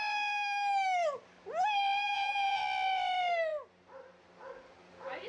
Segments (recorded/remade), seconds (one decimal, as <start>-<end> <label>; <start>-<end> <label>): 0.0-2.0 recorded; 2.0-2.6 remade; 2.6-5.3 recorded